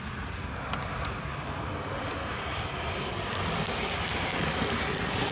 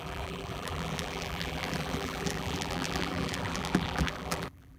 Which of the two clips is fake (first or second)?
second